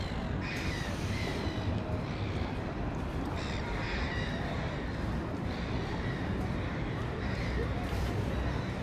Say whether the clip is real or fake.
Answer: fake